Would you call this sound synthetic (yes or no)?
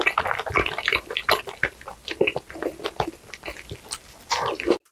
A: no